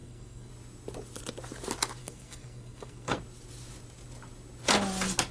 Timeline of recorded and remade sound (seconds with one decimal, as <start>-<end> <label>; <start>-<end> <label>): 0.0-0.5 remade; 0.5-2.0 recorded; 2.0-3.2 remade; 3.2-5.3 recorded